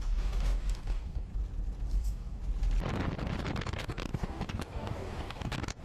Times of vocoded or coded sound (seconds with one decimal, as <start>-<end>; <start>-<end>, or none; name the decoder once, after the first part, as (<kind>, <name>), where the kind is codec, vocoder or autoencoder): 0.0-1.3 (codec, DAC); 2.0-2.4; 3.6-5.8